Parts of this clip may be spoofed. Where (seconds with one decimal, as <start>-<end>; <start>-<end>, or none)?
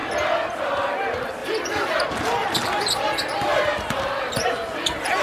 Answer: 1.4-4.3